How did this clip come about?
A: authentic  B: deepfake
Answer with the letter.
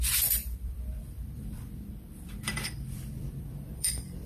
B